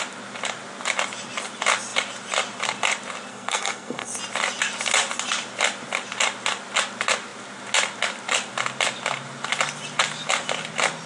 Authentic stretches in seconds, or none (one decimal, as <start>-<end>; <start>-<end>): 0.0-3.3; 4.2-11.1